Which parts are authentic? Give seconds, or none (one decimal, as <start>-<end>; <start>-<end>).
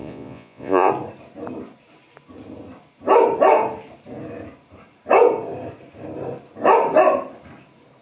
0.9-8.0